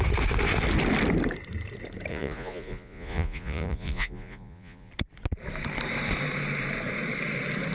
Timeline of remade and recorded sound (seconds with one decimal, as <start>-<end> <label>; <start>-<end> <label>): 0.0-2.1 recorded; 2.1-4.9 remade; 4.9-7.7 recorded